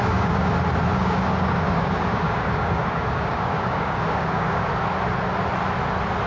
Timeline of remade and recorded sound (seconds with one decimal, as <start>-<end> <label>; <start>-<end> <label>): 0.0-0.5 remade; 0.5-0.9 recorded; 0.9-4.7 remade; 4.7-6.3 recorded